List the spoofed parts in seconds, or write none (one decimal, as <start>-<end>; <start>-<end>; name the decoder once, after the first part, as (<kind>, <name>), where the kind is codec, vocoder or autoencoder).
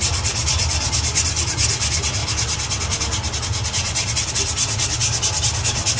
none